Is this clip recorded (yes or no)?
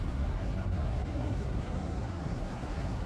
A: no